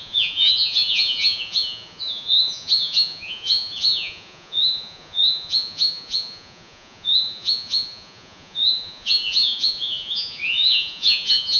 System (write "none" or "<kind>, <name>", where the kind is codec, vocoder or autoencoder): vocoder, Vocos